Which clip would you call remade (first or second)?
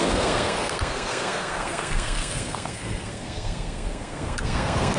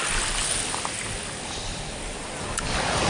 first